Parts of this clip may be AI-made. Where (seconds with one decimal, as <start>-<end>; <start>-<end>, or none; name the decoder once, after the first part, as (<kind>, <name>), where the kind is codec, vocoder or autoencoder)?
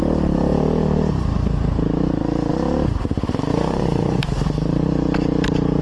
3.5-4.2 (vocoder, Vocos)